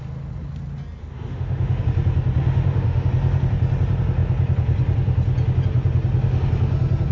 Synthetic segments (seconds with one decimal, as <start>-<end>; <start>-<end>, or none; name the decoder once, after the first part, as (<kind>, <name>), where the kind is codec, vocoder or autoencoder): 1.0-1.8 (autoencoder, DAC-VAE); 2.4-3.1